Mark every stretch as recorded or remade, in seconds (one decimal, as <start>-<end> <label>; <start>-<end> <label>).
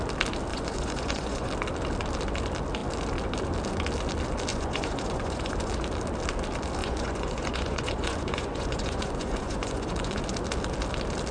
0.0-0.5 recorded; 0.5-1.5 remade; 1.5-4.5 recorded; 4.5-5.7 remade; 5.7-6.8 recorded; 6.8-10.2 remade; 10.2-11.3 recorded